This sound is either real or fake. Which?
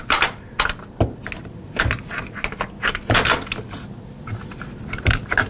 real